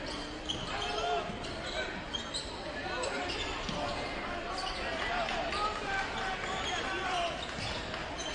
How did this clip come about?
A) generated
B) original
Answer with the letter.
B